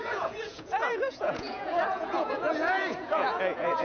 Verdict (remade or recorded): remade